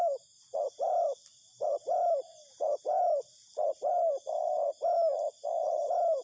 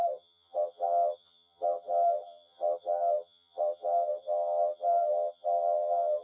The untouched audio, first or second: first